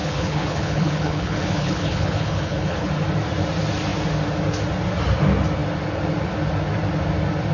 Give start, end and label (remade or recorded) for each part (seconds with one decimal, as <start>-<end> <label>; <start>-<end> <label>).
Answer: 0.0-2.9 remade; 2.9-7.5 recorded